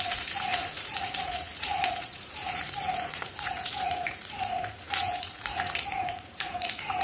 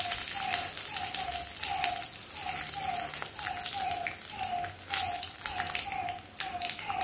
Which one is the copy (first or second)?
first